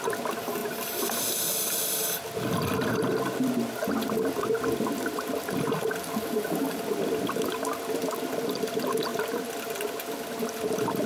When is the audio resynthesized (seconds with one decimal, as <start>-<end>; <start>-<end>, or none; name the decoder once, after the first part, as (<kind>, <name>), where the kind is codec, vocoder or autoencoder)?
none